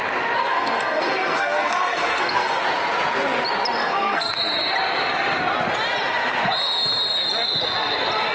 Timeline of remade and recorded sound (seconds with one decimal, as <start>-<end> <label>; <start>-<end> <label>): 0.0-0.4 recorded; 0.4-2.6 remade; 2.6-3.8 recorded; 3.8-4.3 remade; 4.3-8.3 recorded